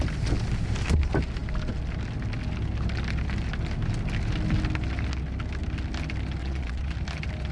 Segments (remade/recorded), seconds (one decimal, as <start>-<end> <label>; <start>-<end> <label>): 0.0-6.4 recorded; 6.4-6.9 remade; 6.9-7.5 recorded

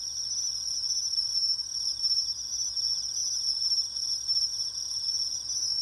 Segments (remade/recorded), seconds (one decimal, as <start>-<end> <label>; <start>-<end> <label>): 0.0-5.8 recorded